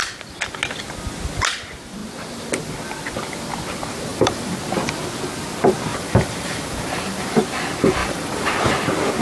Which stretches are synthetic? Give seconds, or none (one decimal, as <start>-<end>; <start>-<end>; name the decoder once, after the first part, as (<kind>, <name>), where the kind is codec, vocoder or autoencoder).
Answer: 4.1-4.6 (vocoder, BigVGAN v2); 5.9-7.4; 8.0-8.6